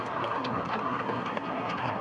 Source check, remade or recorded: remade